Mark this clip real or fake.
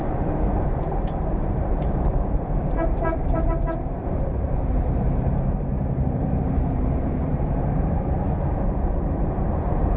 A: fake